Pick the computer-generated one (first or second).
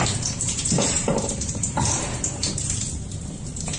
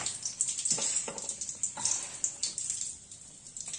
first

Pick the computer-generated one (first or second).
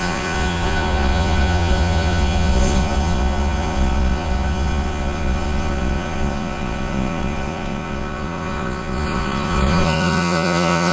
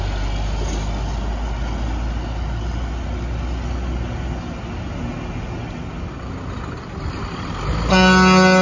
first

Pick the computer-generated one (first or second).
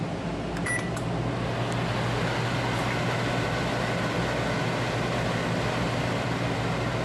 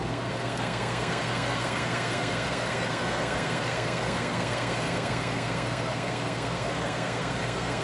second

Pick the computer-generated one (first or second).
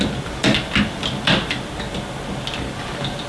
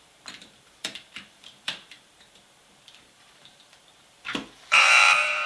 second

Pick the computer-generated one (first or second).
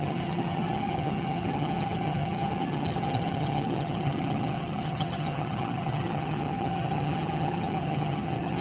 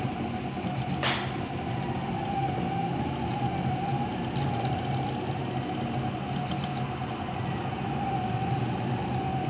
first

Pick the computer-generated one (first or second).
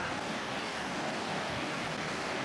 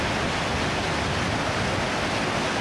first